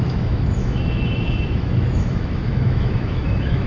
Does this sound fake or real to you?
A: fake